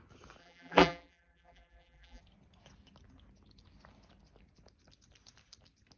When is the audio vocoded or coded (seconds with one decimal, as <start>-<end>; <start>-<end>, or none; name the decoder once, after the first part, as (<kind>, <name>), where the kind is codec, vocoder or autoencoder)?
0.4-2.2 (vocoder, BigVGAN v2)